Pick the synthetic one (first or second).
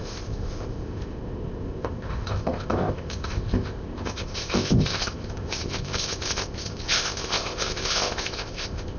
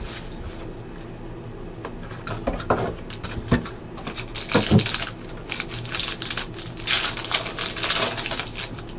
first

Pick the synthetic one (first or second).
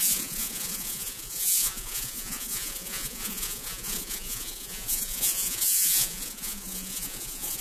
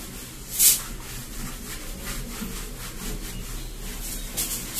first